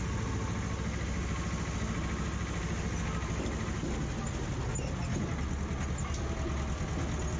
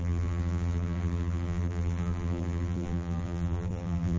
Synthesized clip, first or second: second